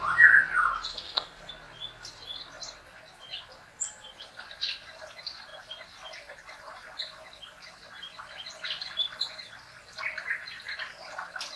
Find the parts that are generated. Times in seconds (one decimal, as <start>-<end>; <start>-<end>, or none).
0.9-1.5